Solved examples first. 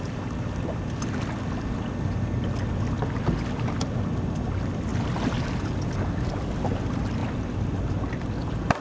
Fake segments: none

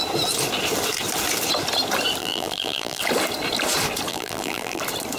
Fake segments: 2.2-3.0 (vocoder, BigVGAN v2); 4.1-4.8

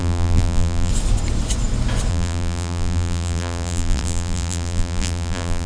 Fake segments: 0.0-0.9 (vocoder, BigVGAN v2); 2.1-5.7

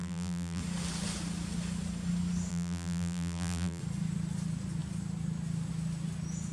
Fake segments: 0.0-0.6 (vocoder, BigVGAN v2); 2.5-3.8